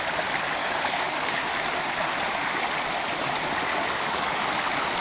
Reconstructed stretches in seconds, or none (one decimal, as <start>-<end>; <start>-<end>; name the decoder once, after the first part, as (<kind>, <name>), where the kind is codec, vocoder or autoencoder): 0.6-1.4 (codec, DAC); 3.7-4.4